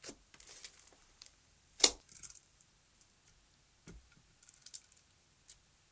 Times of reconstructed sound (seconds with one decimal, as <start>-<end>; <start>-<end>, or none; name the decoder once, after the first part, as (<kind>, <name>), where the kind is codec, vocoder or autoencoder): 1.0-2.7 (vocoder, BigVGAN v2)